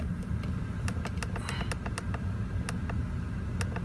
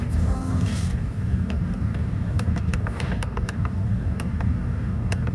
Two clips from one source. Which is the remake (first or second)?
second